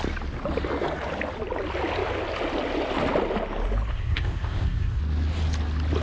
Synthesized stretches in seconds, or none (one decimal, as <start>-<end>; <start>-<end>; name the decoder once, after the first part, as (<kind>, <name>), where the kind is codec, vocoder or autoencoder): 3.9-5.0 (codec, ZipCodec)